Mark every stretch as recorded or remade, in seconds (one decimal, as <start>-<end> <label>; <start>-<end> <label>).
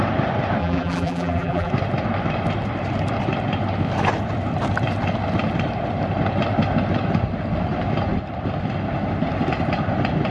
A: 0.0-0.6 recorded; 0.6-1.7 remade; 1.7-10.3 recorded